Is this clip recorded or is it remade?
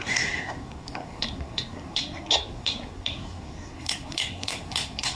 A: remade